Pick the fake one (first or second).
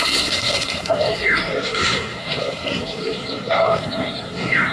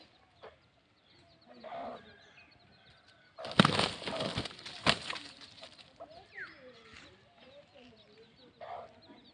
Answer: first